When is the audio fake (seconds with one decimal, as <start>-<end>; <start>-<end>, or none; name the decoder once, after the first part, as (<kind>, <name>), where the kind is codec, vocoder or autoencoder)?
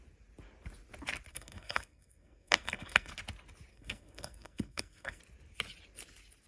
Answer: 1.3-3.1 (codec, SNAC); 3.7-5.2